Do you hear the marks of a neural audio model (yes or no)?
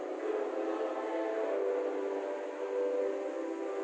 no